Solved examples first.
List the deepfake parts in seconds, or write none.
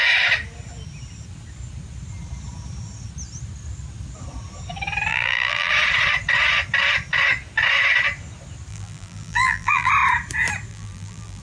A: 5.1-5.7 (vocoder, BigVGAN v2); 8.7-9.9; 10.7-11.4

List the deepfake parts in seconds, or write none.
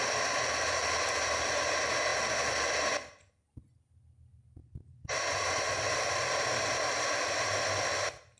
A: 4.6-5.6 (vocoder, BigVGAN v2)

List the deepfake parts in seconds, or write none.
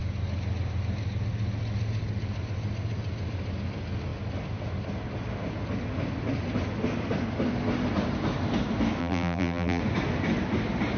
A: 9.0-9.8 (vocoder, BigVGAN v2)